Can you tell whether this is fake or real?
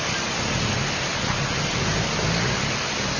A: real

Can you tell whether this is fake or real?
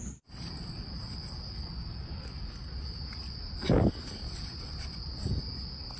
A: real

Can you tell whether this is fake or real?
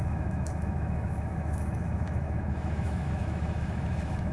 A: fake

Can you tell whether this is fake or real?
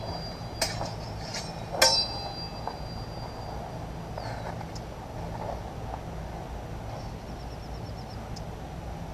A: real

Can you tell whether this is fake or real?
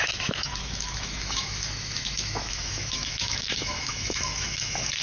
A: fake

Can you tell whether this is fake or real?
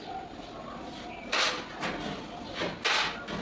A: real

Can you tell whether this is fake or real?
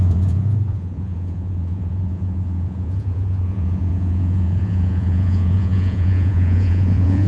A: fake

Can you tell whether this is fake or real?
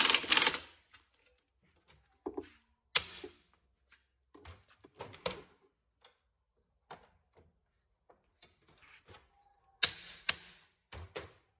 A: real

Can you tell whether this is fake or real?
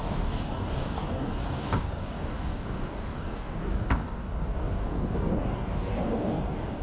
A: fake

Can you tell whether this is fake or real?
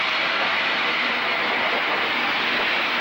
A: real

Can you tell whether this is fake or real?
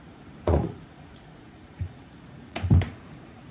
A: fake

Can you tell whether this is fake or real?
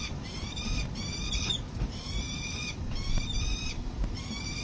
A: fake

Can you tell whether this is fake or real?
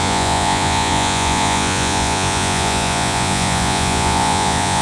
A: fake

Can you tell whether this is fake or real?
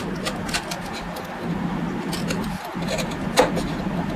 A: real